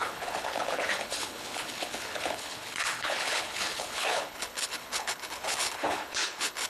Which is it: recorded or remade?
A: remade